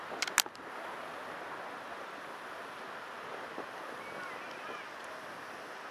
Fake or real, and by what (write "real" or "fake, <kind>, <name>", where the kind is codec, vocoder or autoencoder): real